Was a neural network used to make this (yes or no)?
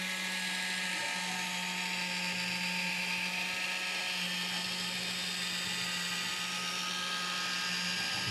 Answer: no